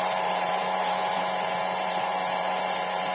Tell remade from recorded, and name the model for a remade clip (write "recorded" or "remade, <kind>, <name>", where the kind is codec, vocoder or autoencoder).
remade, vocoder, BigVGAN v2